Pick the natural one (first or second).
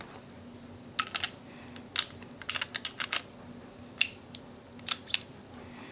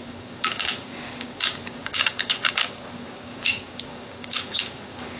first